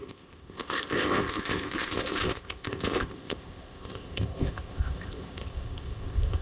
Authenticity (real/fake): fake